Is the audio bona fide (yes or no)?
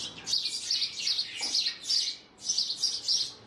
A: yes